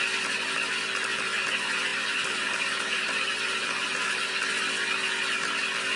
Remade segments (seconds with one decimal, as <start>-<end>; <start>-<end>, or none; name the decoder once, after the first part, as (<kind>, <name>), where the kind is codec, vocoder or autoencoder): 1.9-4.3 (vocoder, BigVGAN v2)